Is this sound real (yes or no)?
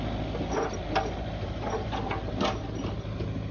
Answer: yes